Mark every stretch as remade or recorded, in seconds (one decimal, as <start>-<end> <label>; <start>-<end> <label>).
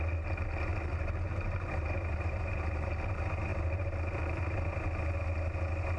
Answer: 0.0-0.7 recorded; 0.7-1.3 remade; 1.3-3.5 recorded; 3.5-4.4 remade; 4.4-6.0 recorded